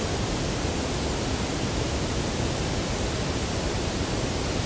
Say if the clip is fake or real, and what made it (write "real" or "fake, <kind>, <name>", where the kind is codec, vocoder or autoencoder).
real